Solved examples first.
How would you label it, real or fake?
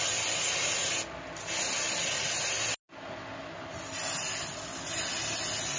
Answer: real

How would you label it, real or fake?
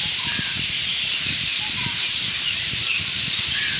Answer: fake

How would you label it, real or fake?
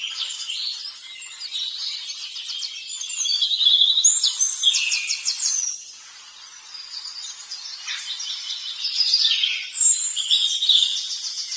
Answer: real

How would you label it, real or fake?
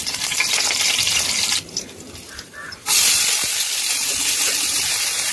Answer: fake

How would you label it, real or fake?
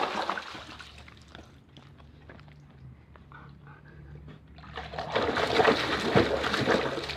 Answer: real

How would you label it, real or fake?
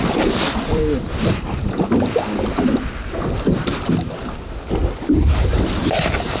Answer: fake